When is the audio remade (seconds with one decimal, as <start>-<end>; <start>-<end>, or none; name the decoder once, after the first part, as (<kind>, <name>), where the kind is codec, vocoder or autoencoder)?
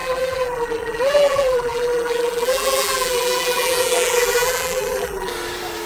0.0-5.3 (vocoder, BigVGAN v2)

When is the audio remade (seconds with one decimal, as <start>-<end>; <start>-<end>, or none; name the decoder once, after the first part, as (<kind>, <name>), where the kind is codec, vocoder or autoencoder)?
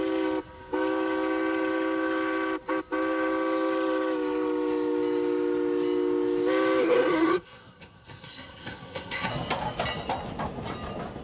6.8-9.3 (codec, SNAC)